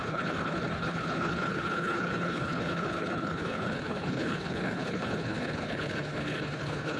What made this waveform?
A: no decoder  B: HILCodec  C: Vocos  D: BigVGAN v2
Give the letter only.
B